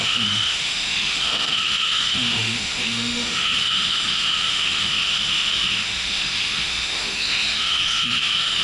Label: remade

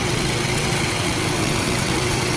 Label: remade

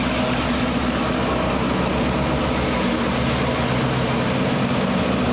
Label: recorded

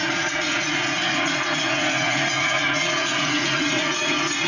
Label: remade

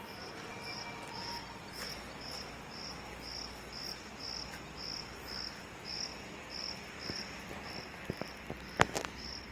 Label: recorded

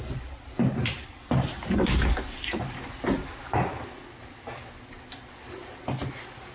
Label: recorded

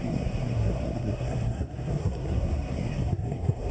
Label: remade